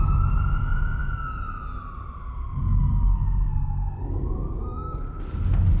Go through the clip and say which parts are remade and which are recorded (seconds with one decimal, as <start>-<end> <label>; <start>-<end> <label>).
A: 0.0-2.9 recorded; 2.9-5.2 remade; 5.2-5.8 recorded